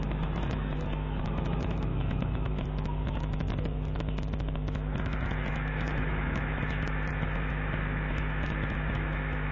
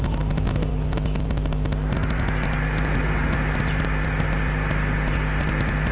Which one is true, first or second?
second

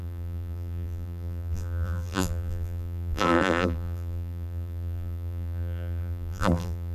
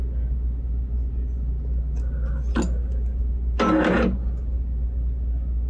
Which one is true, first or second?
second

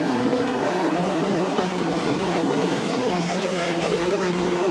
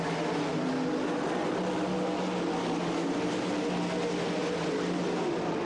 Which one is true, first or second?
second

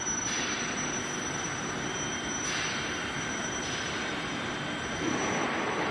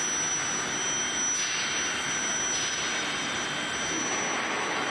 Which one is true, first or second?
second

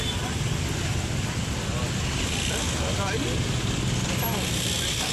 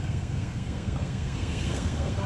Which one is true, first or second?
first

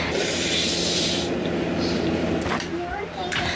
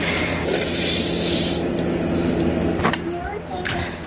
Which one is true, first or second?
second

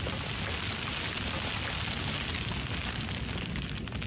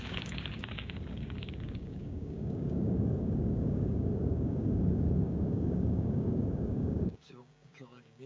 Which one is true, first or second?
first